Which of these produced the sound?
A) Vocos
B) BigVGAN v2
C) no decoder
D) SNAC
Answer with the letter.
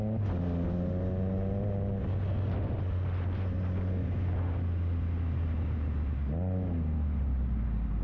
C